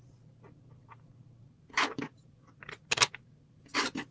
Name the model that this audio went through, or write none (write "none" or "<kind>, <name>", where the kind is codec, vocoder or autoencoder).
none